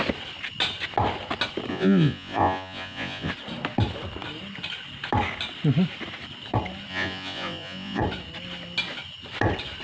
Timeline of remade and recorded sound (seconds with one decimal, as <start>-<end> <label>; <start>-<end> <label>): 0.0-1.7 recorded; 1.7-3.3 remade; 3.3-6.9 recorded; 6.9-8.0 remade; 8.0-9.8 recorded